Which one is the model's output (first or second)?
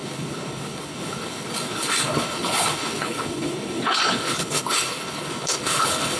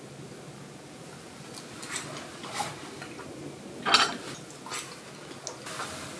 first